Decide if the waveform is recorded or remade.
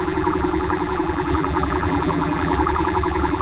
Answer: remade